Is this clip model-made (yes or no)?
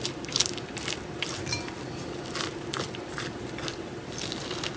no